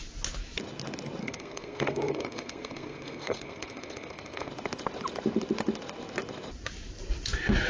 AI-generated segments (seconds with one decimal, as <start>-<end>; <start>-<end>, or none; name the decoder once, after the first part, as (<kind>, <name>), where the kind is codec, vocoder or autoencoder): 1.2-4.5 (codec, SNAC)